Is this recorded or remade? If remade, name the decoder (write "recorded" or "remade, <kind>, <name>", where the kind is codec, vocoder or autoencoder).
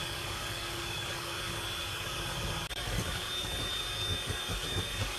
remade, codec, DAC